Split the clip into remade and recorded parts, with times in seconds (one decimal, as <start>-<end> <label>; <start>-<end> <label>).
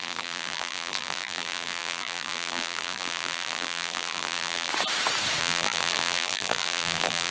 0.0-4.7 remade; 4.7-5.4 recorded; 5.4-7.3 remade